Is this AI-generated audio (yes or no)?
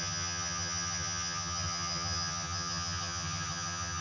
yes